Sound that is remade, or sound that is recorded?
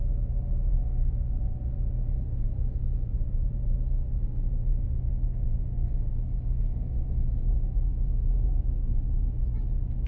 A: remade